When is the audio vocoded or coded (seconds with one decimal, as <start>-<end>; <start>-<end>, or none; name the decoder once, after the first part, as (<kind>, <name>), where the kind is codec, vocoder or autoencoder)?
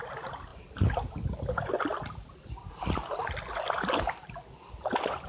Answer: 0.5-1.1 (vocoder, BigVGAN v2)